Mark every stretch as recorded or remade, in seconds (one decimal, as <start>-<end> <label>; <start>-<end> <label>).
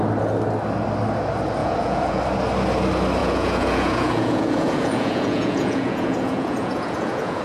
0.0-1.6 recorded; 1.6-2.2 remade; 2.2-3.2 recorded; 3.2-7.4 remade